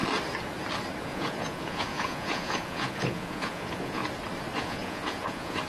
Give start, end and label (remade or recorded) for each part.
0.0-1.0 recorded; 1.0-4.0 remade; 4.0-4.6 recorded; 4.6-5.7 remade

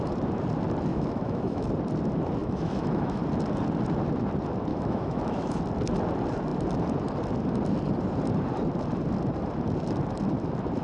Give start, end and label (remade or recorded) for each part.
0.0-0.9 recorded; 0.9-1.7 remade; 1.7-2.4 recorded; 2.4-3.2 remade; 3.2-4.7 recorded; 4.7-5.6 remade; 5.6-10.8 recorded

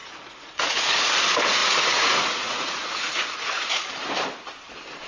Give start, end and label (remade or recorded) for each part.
0.0-1.1 remade; 1.1-1.6 recorded; 1.6-3.8 remade; 3.8-5.1 recorded

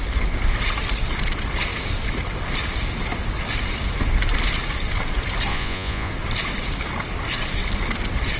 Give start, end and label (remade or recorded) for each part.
0.0-5.5 recorded; 5.5-6.1 remade; 6.1-8.4 recorded

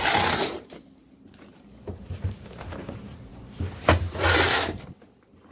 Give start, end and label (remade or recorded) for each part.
0.0-3.3 remade; 3.3-5.5 recorded